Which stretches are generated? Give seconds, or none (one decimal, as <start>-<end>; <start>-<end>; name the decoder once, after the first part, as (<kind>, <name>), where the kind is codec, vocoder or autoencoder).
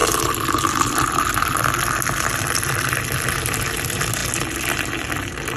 0.0-3.4 (vocoder, BigVGAN v2)